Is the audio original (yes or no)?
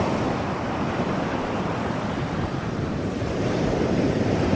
no